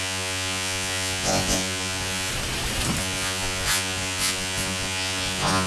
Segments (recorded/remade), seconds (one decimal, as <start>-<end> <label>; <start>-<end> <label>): 0.0-2.3 remade; 2.3-3.0 recorded; 3.0-5.7 remade